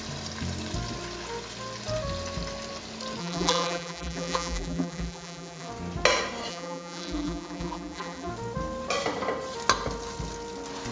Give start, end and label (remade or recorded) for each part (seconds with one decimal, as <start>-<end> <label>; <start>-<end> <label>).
0.0-3.2 recorded; 3.2-5.7 remade; 5.7-6.5 recorded; 6.5-8.3 remade; 8.3-10.9 recorded